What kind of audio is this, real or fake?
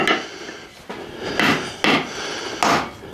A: real